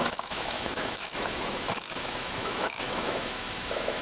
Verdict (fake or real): fake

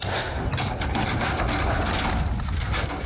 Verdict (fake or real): real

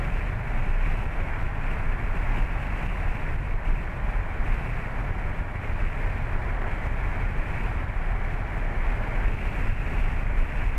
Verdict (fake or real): real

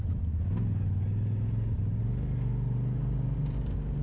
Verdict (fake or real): real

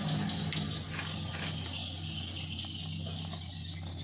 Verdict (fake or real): real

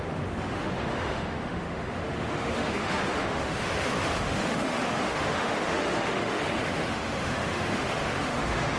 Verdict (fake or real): fake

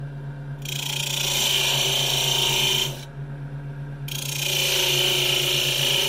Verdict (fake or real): real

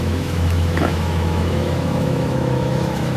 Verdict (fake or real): fake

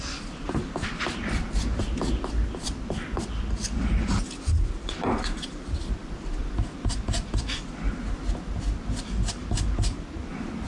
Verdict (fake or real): real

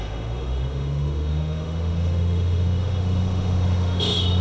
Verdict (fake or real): fake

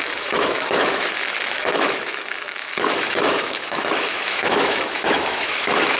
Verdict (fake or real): fake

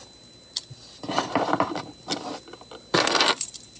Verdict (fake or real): real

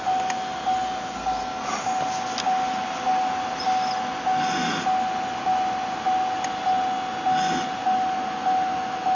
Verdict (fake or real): real